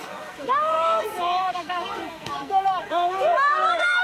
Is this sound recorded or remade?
remade